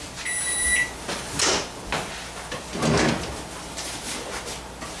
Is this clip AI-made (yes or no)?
no